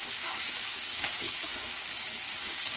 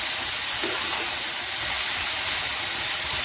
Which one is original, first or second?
second